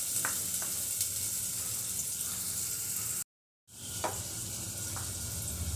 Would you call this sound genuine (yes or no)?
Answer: yes